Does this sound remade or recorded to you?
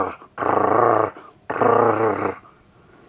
recorded